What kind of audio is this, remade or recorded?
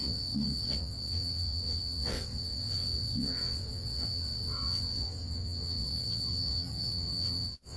remade